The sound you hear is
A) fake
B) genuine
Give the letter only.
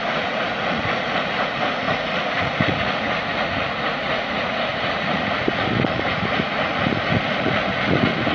A